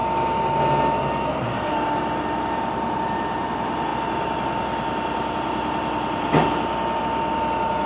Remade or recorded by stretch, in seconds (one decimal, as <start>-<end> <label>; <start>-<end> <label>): 0.0-1.3 recorded; 1.3-7.9 remade